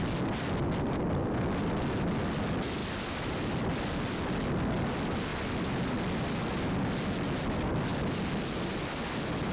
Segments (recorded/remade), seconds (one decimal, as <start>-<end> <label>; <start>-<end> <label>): 0.0-9.5 recorded